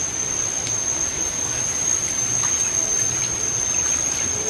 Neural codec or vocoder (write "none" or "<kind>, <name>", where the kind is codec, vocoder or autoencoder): none